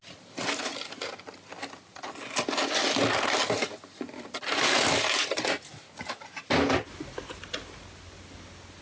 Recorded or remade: recorded